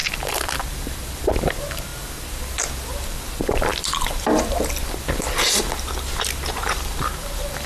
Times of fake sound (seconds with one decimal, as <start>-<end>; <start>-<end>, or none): 0.0-7.7